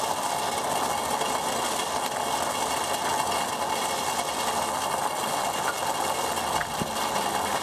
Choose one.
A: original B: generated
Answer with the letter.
A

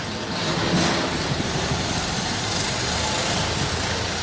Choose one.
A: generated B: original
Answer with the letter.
B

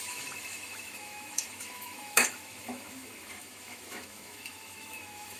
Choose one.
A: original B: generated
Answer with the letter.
B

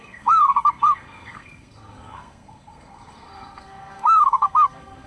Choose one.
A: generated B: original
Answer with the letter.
A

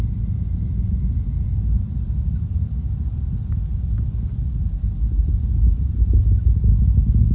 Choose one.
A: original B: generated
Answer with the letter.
A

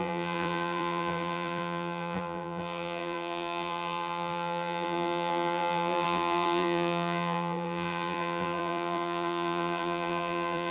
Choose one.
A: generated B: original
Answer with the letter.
A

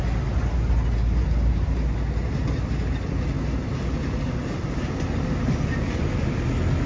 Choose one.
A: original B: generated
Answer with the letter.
A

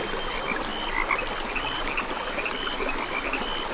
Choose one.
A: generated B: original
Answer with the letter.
B